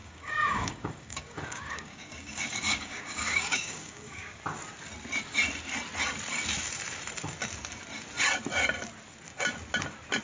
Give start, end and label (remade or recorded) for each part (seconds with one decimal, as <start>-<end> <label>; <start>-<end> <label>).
0.0-4.4 remade; 4.4-10.2 recorded